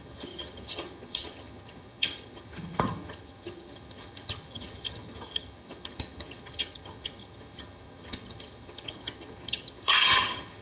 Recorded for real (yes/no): no